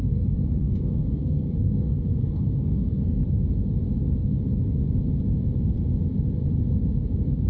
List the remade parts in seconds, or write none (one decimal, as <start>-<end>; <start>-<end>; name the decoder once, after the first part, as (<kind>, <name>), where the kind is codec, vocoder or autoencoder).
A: 0.0-3.2 (codec, SNAC)